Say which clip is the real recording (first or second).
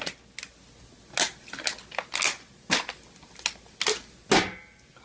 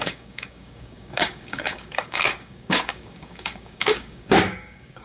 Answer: first